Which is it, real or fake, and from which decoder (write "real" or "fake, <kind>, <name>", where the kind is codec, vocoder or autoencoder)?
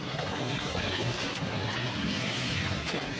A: fake, codec, SNAC